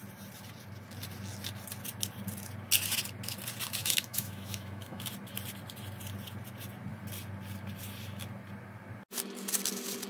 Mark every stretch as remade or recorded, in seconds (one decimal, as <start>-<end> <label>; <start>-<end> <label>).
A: 0.0-3.8 recorded; 3.8-5.1 remade; 5.1-10.1 recorded